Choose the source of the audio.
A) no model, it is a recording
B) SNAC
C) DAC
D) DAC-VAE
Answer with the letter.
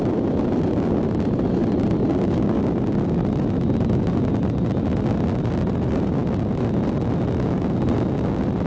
A